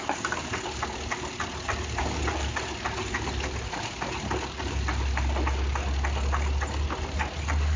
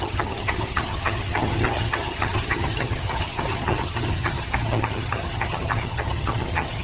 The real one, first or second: first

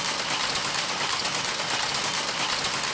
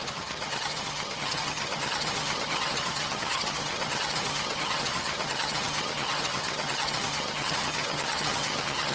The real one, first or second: first